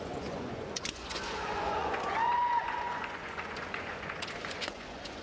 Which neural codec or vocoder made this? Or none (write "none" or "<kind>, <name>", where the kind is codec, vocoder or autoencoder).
vocoder, Vocos